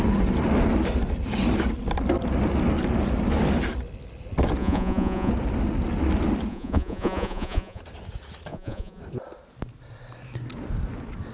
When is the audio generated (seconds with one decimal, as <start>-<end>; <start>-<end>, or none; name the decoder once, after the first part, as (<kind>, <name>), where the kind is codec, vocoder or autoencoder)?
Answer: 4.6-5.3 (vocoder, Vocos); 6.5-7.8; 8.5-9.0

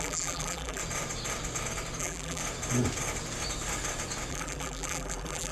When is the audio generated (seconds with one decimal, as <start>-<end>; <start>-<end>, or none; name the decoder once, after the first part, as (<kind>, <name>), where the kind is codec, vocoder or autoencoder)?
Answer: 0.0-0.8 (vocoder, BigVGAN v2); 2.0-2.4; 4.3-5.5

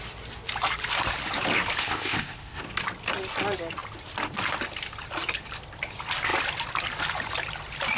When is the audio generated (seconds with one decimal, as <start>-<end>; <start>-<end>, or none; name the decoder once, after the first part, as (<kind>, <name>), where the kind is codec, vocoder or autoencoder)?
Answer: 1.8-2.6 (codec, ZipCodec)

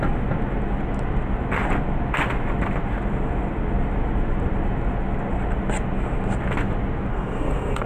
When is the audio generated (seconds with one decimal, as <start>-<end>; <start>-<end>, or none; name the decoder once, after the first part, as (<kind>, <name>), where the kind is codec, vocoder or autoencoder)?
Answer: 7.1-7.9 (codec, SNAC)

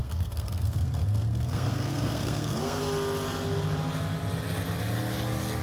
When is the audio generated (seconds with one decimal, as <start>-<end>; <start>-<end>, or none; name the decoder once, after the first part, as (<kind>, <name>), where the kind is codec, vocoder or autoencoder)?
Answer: 0.0-2.8 (codec, SNAC)